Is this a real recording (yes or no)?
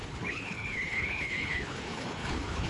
no